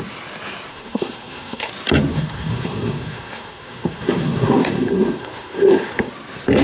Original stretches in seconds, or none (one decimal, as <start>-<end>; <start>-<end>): 0.0-0.7; 1.7-2.1; 6.1-6.6